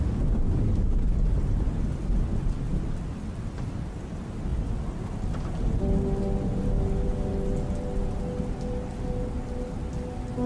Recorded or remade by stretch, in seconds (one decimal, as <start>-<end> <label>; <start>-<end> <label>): 0.0-10.5 recorded